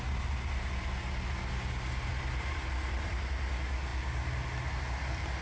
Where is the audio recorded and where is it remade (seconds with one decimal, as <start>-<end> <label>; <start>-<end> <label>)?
0.0-2.1 recorded; 2.1-3.2 remade; 3.2-5.4 recorded